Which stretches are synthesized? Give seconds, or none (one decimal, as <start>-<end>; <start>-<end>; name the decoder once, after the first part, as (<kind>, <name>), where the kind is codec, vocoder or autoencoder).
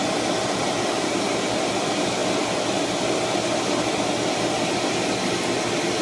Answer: none